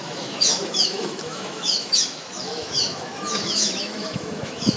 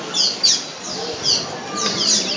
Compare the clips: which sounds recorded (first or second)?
second